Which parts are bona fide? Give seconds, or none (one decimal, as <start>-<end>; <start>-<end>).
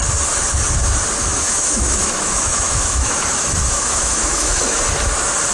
0.0-1.3; 4.6-5.5